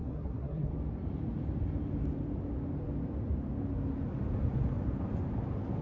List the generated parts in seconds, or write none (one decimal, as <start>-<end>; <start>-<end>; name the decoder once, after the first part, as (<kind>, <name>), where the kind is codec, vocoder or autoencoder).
0.0-0.7 (codec, SNAC)